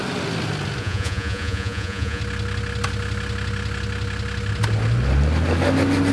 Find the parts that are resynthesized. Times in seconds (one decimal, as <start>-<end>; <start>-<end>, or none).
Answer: 0.8-2.2